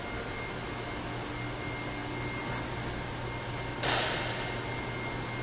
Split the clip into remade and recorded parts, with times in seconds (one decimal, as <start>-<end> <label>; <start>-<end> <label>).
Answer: 0.0-5.4 recorded